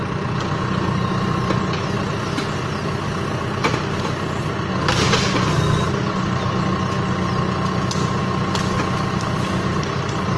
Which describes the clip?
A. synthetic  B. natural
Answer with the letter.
B